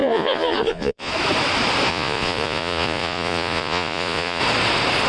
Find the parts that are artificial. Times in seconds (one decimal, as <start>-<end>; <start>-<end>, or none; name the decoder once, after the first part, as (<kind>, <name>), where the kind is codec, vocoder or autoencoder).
0.0-1.1 (vocoder, Vocos); 1.9-4.4